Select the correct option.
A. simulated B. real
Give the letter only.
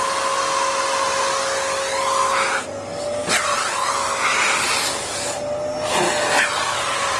B